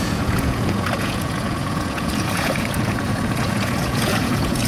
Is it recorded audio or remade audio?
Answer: remade